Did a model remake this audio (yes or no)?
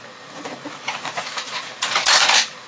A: yes